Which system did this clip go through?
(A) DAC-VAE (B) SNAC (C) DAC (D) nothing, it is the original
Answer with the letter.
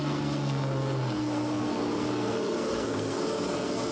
B